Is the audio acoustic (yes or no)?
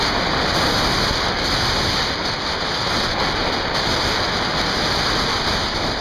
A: yes